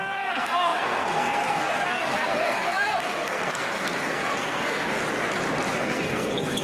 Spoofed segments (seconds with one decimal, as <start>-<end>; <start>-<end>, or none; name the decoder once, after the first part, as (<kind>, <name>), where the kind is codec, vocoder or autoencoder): 0.0-5.0 (codec, SNAC); 5.8-6.6